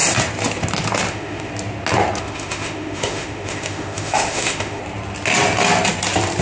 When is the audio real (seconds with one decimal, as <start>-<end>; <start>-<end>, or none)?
0.0-1.1; 1.5-2.2; 4.8-6.4